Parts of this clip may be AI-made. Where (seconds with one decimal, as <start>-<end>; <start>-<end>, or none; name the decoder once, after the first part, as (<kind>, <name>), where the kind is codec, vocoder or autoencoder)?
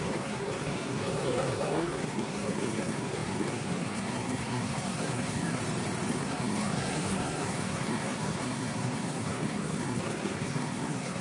0.0-5.6 (codec, SNAC); 6.1-11.2